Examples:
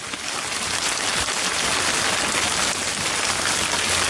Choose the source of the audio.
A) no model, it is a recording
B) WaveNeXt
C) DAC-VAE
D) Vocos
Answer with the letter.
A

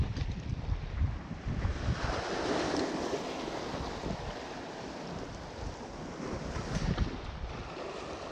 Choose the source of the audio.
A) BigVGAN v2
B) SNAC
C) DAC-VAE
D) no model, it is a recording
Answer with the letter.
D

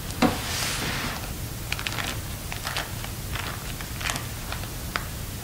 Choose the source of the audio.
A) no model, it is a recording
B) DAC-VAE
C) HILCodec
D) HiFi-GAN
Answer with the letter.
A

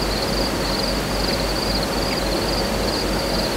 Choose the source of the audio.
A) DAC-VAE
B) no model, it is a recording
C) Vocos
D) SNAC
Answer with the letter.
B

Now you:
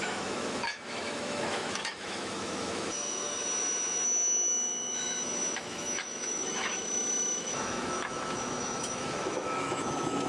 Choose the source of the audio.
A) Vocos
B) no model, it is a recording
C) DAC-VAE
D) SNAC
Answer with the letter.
C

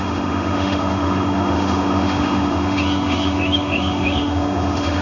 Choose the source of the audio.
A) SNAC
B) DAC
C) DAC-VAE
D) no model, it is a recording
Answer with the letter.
C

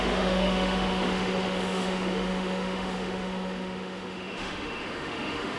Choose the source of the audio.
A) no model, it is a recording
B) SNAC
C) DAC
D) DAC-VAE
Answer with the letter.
D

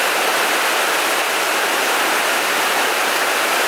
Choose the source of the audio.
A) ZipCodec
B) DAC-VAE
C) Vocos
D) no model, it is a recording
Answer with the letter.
D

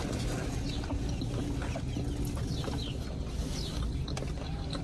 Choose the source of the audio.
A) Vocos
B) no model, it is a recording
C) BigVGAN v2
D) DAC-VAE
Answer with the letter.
B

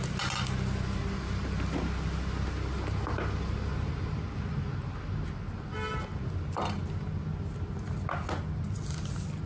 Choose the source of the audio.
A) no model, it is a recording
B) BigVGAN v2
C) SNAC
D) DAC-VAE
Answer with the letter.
A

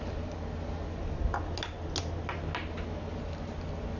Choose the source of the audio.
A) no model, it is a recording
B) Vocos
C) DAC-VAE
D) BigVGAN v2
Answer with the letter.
A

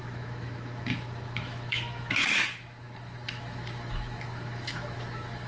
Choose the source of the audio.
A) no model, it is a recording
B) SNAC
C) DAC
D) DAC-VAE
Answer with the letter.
D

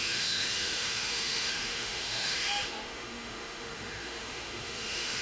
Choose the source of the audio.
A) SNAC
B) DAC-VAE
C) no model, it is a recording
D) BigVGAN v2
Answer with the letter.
B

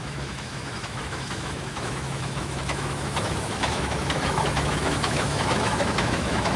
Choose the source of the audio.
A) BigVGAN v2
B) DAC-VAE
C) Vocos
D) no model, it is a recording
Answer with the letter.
B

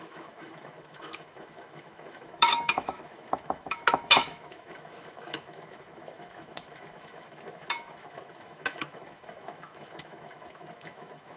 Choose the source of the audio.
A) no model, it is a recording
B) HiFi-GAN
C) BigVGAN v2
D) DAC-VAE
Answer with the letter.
D